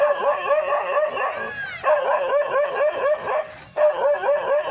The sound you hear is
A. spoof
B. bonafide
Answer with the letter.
B